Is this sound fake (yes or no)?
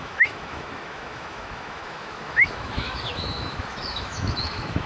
yes